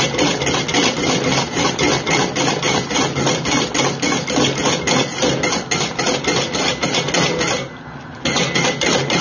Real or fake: real